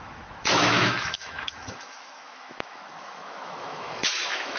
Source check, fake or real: fake